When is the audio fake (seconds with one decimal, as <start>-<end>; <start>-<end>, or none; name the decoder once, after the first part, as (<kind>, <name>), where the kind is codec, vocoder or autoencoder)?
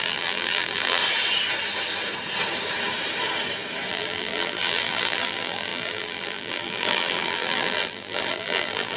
0.0-1.0 (vocoder, BigVGAN v2); 3.9-9.0